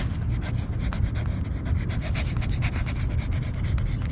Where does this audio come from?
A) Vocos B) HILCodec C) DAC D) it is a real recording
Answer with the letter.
D